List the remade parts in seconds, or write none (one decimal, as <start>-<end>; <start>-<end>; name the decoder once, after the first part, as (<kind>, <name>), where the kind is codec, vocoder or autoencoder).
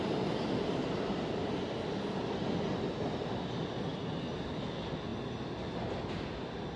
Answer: none